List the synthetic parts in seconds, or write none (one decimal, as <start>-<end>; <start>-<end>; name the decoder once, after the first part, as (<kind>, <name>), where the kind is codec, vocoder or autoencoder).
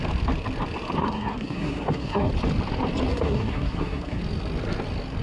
1.0-2.3 (codec, SNAC); 3.1-4.2